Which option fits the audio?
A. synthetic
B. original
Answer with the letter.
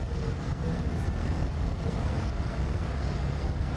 A